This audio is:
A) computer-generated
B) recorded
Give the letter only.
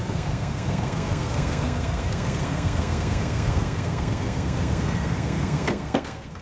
A